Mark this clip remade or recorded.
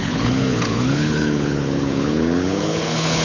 remade